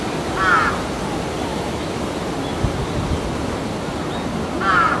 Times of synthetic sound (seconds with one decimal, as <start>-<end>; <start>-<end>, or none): 1.5-2.0